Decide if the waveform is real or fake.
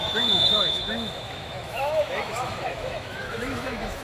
fake